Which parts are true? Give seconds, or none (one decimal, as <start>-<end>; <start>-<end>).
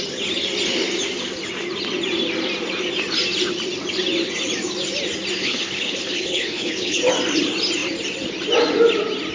0.0-5.4; 7.0-9.3